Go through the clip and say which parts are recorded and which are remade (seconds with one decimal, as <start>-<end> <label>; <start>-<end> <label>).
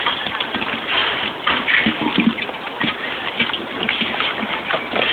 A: 0.0-1.0 recorded; 1.0-1.8 remade; 1.8-5.1 recorded